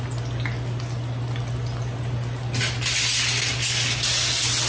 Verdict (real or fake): real